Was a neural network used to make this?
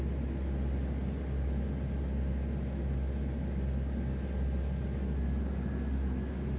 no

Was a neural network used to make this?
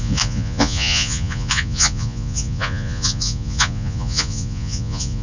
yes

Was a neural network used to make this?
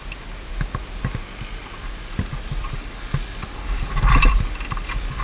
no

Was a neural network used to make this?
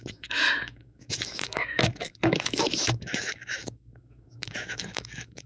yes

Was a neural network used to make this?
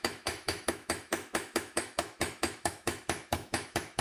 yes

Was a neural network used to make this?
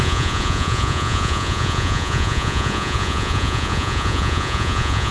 yes